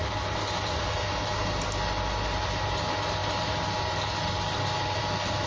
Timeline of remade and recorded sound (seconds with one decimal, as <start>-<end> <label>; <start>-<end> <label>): 0.0-5.5 recorded